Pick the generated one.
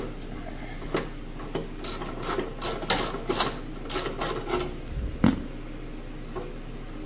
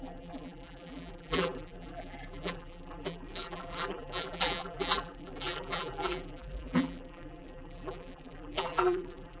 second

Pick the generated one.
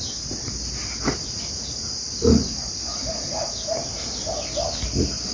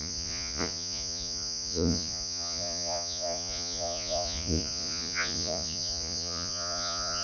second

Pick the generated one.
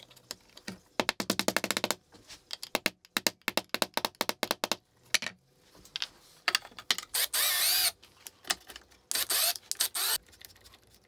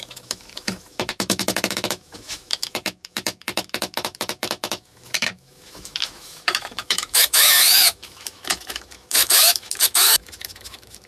second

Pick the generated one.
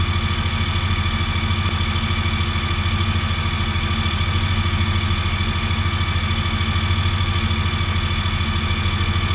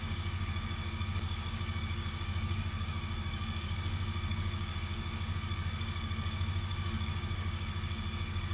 second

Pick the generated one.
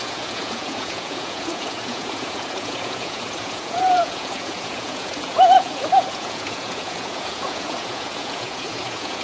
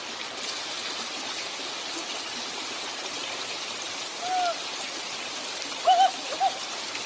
first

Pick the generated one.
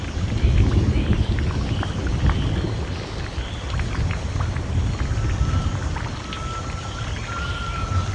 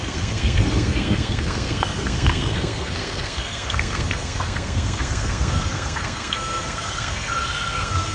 second